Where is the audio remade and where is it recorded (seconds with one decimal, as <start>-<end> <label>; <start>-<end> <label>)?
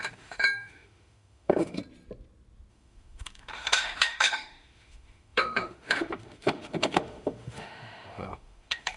0.0-1.8 remade; 1.8-2.7 recorded; 2.7-9.0 remade